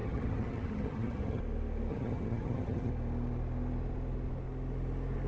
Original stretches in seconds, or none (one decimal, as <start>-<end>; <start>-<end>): 1.4-1.9; 2.9-5.3